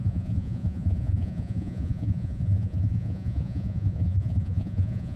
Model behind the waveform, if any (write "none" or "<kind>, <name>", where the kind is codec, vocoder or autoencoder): vocoder, Vocos